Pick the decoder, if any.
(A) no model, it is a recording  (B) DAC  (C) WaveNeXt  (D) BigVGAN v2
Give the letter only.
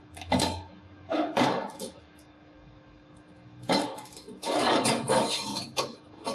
B